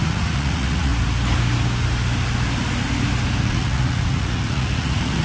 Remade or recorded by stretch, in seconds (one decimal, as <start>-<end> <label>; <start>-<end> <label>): 0.0-0.9 remade; 0.9-3.4 recorded; 3.4-5.2 remade